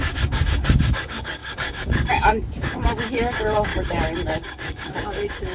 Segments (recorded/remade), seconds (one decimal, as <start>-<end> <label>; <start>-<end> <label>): 0.0-3.7 remade; 3.7-4.3 recorded; 4.3-5.5 remade